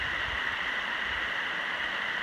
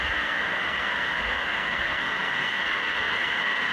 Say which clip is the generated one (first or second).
second